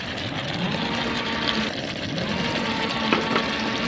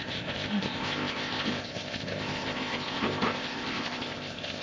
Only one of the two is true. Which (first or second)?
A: first